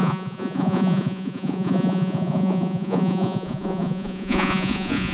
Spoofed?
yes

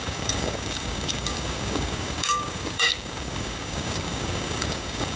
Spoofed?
yes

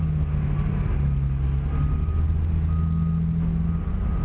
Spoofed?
no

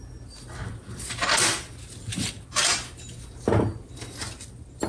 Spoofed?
no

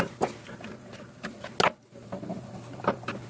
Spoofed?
no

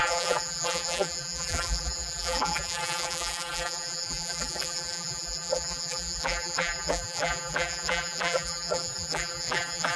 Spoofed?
yes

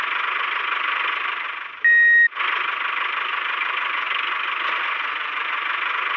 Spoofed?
no